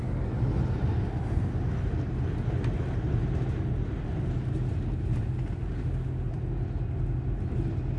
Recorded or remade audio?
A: recorded